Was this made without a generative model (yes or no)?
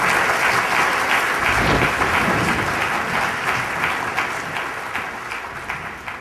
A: yes